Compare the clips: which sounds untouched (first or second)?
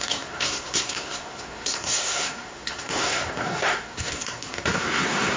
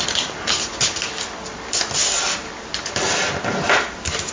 second